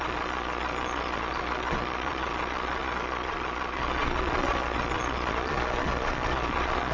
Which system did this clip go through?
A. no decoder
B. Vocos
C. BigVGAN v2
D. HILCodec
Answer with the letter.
B